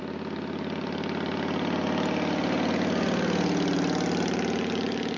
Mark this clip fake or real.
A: real